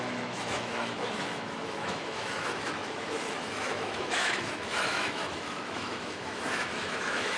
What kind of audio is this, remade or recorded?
remade